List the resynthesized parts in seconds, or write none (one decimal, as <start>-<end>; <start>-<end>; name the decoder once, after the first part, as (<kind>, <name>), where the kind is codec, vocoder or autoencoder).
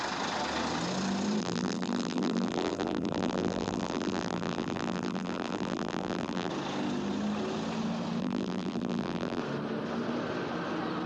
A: 1.4-6.5 (vocoder, BigVGAN v2); 8.2-9.4